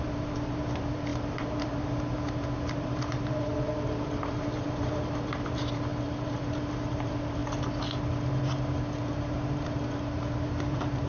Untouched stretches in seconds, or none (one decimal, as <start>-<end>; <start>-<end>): 7.4-9.7